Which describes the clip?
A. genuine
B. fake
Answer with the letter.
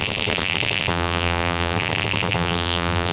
B